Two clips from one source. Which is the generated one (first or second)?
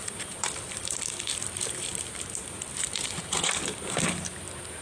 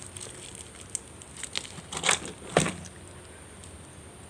first